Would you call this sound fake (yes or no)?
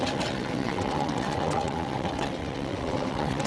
yes